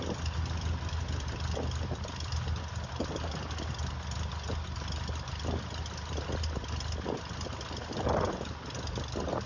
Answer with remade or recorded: recorded